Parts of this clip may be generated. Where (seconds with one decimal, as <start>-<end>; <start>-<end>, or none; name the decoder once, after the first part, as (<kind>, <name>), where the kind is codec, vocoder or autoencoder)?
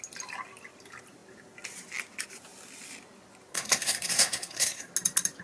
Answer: 3.5-4.9 (codec, SNAC)